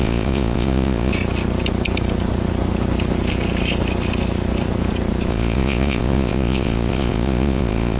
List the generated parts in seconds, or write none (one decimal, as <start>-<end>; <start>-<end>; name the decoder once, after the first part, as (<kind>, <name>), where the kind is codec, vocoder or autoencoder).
0.0-1.1 (vocoder, Vocos); 5.3-8.0